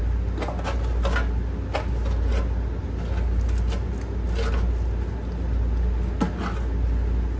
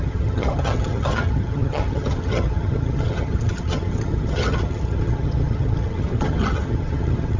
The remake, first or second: second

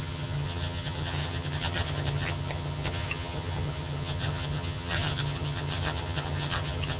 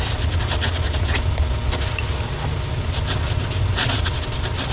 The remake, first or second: first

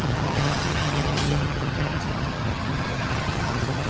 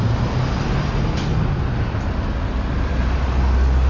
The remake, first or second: first